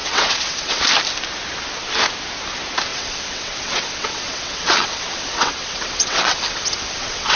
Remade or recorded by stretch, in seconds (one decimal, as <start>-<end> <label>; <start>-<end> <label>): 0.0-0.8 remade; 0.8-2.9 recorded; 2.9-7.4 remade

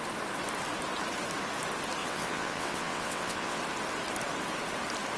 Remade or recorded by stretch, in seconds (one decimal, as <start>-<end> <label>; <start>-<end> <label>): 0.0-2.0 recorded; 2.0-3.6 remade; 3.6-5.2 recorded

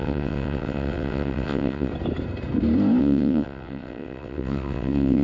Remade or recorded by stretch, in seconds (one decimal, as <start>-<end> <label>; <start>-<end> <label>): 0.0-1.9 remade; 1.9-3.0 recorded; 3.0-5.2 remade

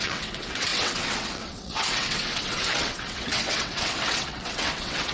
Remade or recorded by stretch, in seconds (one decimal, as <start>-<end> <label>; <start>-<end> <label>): 0.0-5.1 remade

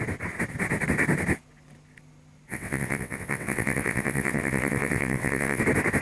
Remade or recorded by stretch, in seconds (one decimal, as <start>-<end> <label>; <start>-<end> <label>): 0.0-2.5 recorded; 2.5-5.6 remade; 5.6-6.0 recorded